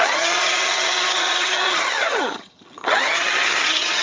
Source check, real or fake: fake